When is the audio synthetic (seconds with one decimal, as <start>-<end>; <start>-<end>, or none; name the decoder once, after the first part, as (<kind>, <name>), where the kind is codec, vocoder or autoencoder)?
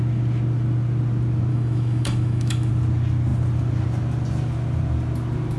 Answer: 1.5-2.7 (autoencoder, DAC-VAE)